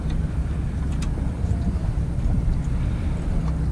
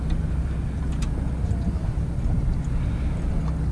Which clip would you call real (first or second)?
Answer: second